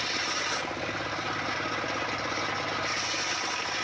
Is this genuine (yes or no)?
yes